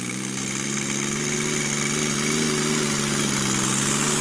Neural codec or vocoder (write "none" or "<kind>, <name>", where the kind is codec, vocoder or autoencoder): none